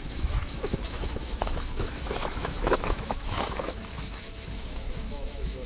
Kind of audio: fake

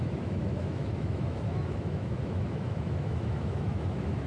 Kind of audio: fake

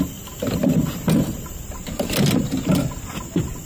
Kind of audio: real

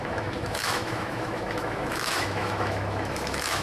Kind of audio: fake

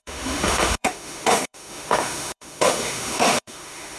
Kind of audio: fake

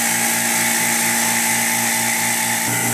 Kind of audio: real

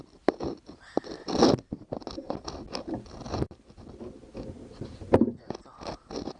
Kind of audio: real